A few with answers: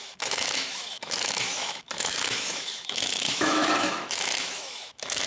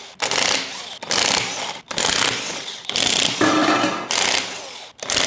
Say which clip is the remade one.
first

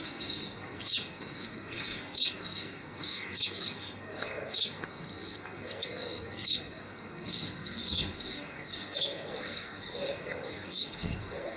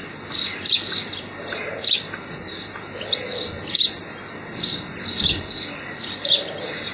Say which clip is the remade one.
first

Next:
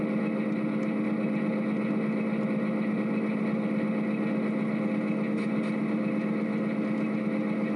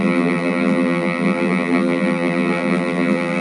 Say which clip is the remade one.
second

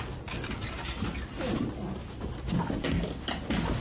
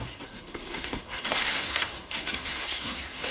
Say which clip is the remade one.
second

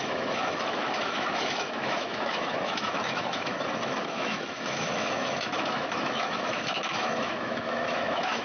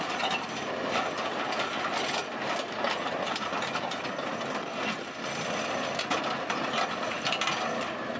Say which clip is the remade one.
first